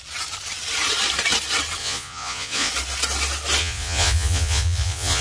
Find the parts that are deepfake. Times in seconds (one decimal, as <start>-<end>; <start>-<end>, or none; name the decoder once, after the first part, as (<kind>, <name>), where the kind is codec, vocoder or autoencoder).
1.8-2.7 (vocoder, Vocos); 3.6-5.2